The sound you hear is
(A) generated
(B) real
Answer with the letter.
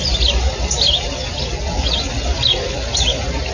B